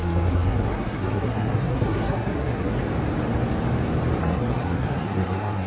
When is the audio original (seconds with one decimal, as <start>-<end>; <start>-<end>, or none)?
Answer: 2.8-4.2